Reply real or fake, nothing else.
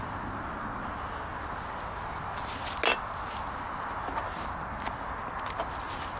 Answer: real